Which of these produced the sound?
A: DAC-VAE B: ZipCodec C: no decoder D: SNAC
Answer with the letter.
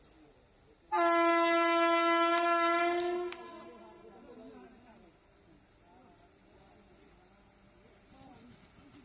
C